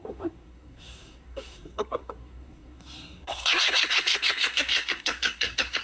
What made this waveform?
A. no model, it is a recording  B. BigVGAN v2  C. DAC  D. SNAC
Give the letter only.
D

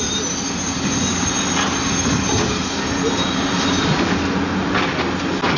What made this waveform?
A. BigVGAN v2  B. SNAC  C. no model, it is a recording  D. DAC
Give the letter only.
C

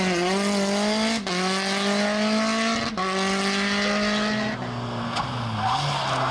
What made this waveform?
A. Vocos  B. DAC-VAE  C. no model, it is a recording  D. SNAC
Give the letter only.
C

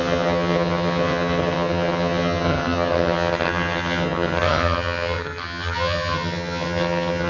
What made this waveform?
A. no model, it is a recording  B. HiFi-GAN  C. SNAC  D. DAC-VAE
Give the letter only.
B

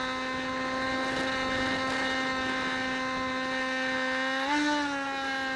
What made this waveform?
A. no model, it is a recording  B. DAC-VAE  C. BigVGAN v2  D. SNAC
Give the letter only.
A